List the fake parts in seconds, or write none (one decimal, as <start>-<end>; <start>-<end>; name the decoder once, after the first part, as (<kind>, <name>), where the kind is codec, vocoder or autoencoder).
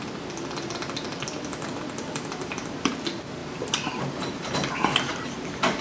1.1-2.9 (vocoder, BigVGAN v2); 3.4-5.3